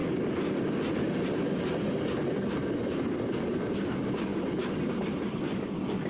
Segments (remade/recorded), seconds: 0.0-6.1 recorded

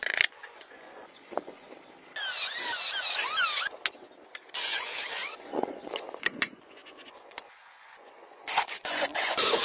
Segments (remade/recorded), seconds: 0.0-1.7 remade; 1.7-4.5 recorded; 4.5-9.6 remade

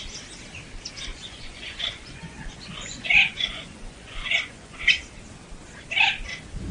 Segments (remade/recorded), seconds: 0.0-1.1 recorded; 1.1-4.8 remade; 4.8-6.7 recorded

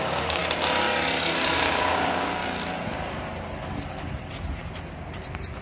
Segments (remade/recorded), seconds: 0.0-0.4 remade; 0.4-1.5 recorded; 1.5-2.4 remade; 2.4-5.6 recorded

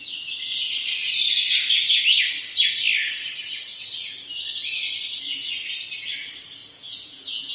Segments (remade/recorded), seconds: 0.0-6.6 recorded; 6.6-7.5 remade